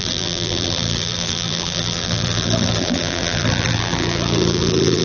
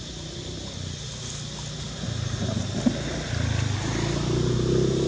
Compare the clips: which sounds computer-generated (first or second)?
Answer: first